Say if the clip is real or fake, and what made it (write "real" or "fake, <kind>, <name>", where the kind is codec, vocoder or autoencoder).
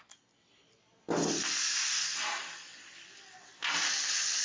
real